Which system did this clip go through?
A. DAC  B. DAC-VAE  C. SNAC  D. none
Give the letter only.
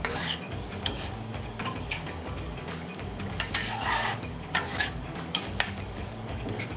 A